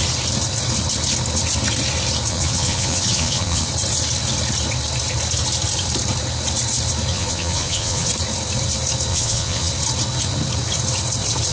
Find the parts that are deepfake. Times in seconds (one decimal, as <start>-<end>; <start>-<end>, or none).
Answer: 2.3-3.7; 7.1-8.1; 9.1-9.7